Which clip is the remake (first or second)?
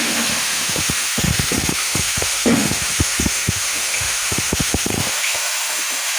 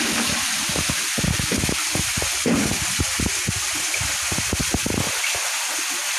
first